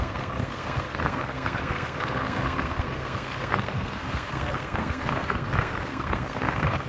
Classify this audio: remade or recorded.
remade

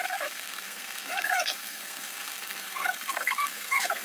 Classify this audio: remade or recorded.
remade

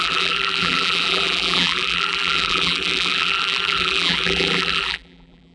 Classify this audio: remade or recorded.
remade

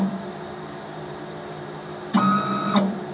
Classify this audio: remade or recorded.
recorded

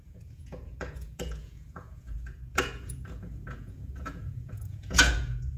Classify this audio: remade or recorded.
remade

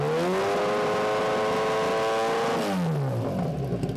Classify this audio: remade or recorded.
recorded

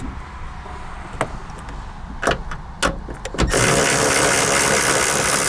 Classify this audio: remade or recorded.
recorded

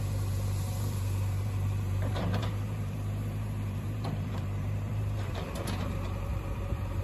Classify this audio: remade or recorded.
remade